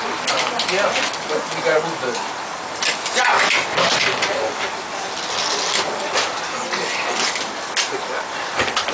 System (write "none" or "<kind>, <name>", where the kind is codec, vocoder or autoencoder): none